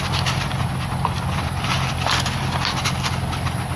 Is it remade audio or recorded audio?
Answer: recorded